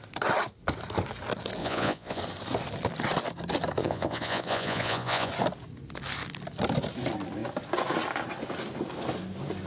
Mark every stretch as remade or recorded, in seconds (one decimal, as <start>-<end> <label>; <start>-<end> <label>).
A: 0.0-1.6 recorded; 1.6-2.2 remade; 2.2-3.8 recorded; 3.8-5.3 remade; 5.3-9.7 recorded